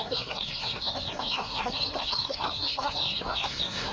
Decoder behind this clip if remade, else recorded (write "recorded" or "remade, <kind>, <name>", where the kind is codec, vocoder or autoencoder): remade, codec, SNAC